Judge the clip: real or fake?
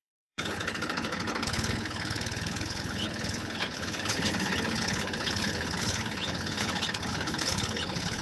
fake